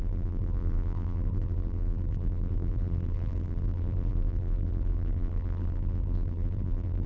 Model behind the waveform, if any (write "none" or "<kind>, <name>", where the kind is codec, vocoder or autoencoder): vocoder, BigVGAN v2